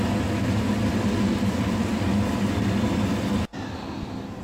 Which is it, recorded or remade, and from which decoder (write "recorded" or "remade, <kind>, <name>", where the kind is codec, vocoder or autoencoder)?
recorded